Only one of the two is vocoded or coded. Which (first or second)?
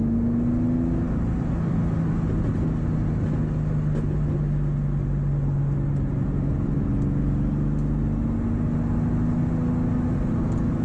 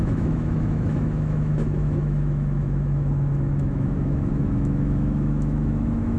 second